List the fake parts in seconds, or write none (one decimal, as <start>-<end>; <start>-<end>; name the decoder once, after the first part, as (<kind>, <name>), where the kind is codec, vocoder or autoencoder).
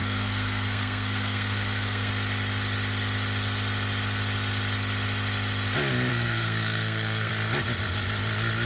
0.0-2.1 (codec, SNAC); 6.1-7.3